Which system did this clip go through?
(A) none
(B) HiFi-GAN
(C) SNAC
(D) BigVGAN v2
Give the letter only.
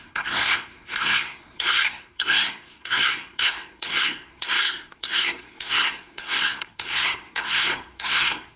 C